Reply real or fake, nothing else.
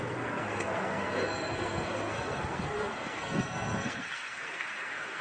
fake